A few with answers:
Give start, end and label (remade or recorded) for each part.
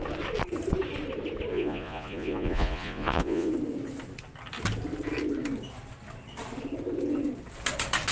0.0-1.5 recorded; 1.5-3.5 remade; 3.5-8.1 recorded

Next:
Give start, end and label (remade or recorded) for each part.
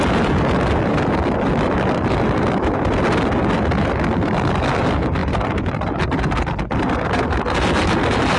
0.0-8.4 recorded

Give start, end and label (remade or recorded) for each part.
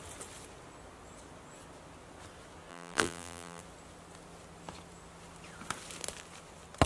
0.0-2.7 recorded; 2.7-3.6 remade; 3.6-6.9 recorded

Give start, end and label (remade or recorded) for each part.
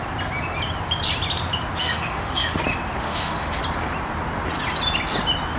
0.0-1.8 recorded; 1.8-2.6 remade; 2.6-3.0 recorded; 3.0-3.6 remade; 3.6-5.6 recorded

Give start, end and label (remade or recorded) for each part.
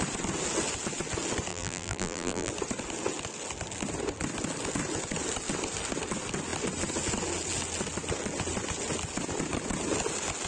0.0-1.5 recorded; 1.5-2.5 remade; 2.5-10.5 recorded